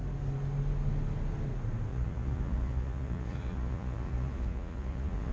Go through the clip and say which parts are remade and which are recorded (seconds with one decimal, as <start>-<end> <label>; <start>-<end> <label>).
0.0-1.9 recorded; 1.9-5.3 remade